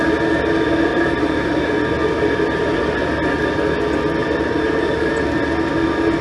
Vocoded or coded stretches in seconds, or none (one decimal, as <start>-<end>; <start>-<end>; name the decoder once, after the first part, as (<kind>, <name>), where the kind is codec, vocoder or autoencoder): 0.9-1.7 (vocoder, BigVGAN v2); 4.2-5.1